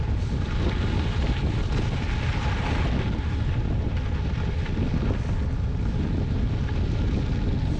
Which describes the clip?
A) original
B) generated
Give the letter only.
A